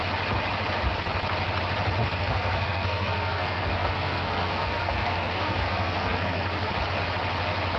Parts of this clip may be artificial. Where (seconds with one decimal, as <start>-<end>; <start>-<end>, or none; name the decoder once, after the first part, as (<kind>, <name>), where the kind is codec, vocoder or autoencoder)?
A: 2.0-6.7 (codec, SNAC)